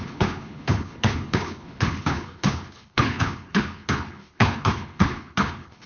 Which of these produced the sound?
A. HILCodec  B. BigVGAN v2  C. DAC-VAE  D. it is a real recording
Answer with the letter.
A